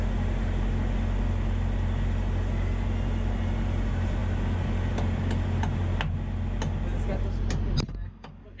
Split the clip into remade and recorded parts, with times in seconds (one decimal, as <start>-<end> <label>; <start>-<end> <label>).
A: 0.0-8.6 recorded